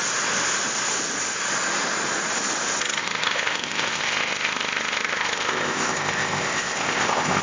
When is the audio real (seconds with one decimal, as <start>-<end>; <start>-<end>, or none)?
0.0-3.0